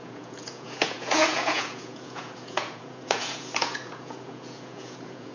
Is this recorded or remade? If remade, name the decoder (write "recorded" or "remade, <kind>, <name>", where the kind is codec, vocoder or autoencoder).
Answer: remade, vocoder, Vocos